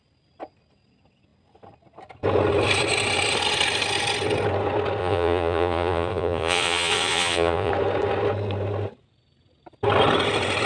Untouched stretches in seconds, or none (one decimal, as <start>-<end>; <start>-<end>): 0.0-5.0; 7.7-10.7